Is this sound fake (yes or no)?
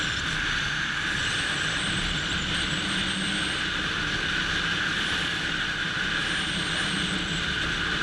no